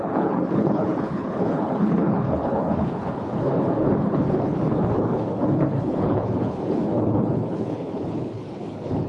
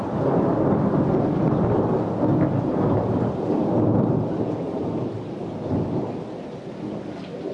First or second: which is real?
second